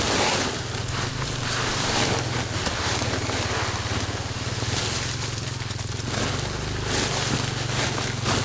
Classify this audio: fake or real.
real